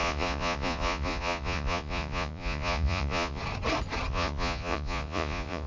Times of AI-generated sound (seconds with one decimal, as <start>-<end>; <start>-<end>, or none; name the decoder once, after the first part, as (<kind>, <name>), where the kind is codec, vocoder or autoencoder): 0.0-3.4 (vocoder, Vocos); 4.1-5.7